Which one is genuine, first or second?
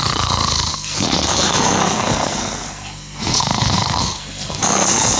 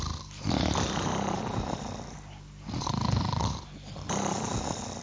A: second